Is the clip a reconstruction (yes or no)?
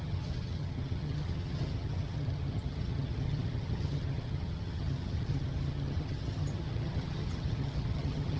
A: yes